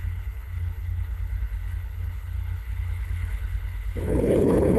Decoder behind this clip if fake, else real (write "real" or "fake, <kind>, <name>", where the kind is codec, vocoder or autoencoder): fake, codec, HILCodec